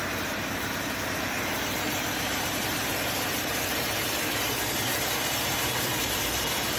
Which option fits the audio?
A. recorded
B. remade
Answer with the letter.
B